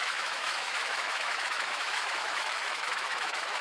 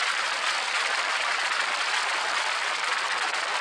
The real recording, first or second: second